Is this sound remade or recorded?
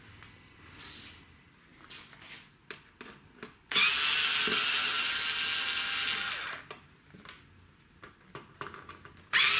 recorded